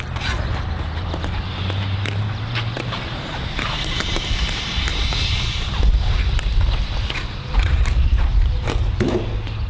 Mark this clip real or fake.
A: fake